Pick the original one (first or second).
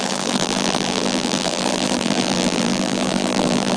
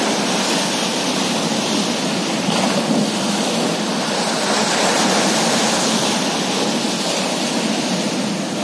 second